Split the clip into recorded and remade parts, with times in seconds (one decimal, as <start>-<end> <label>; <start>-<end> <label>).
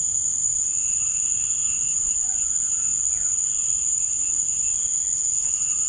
0.0-2.9 recorded; 2.9-3.8 remade; 3.8-5.9 recorded